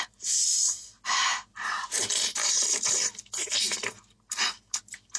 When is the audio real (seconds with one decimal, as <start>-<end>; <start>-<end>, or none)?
0.0-5.2